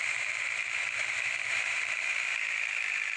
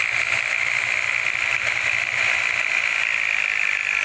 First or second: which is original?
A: second